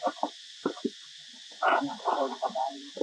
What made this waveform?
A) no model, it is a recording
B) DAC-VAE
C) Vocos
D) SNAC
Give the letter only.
C